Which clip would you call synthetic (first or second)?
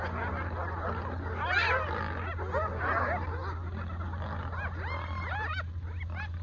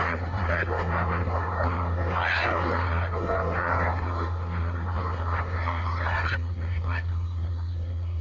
second